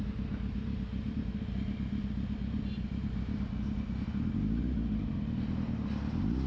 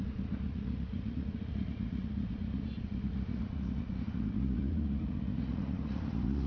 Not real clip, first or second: second